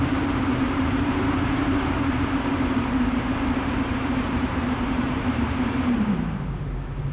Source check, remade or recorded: remade